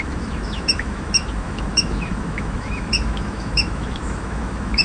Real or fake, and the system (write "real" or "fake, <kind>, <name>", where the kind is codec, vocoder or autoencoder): fake, autoencoder, DAC-VAE